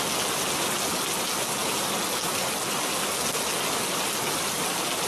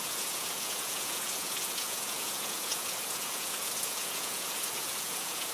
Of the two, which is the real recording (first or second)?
first